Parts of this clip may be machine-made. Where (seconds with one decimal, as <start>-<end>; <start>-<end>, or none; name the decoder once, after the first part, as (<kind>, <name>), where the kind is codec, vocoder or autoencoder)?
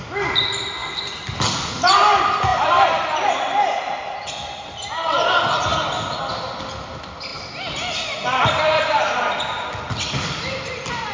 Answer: none